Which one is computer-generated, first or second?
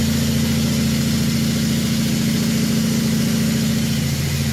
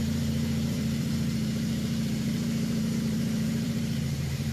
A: second